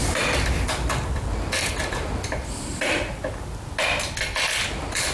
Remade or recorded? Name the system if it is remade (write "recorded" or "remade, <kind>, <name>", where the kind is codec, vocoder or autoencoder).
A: recorded